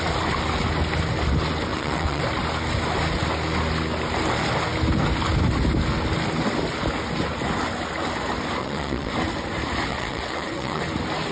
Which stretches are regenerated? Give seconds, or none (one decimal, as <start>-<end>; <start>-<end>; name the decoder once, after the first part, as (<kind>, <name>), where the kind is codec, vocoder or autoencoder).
1.7-2.2 (vocoder, WaveNeXt); 8.6-9.1; 9.9-10.8